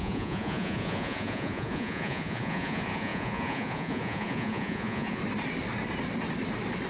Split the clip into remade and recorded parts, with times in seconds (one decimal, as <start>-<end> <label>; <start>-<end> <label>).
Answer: 0.0-5.2 remade; 5.2-6.9 recorded